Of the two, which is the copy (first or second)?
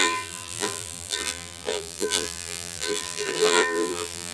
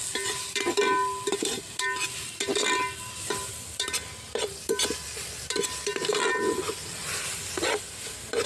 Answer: first